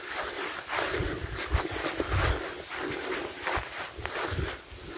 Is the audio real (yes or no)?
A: yes